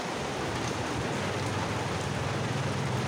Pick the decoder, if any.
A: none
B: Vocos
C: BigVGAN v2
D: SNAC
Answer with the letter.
A